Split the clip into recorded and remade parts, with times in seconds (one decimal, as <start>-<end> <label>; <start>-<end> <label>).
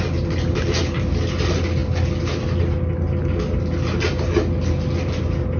0.0-5.6 recorded